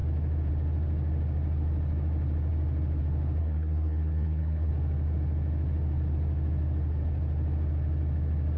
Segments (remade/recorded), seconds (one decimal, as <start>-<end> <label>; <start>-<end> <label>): 0.0-3.4 recorded; 3.4-4.7 remade; 4.7-8.6 recorded